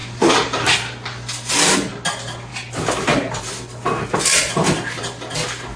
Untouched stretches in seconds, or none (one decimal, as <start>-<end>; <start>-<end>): 0.0-5.8